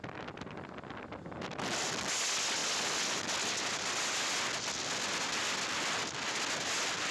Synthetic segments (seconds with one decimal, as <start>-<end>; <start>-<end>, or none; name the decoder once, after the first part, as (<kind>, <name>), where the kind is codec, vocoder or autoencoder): none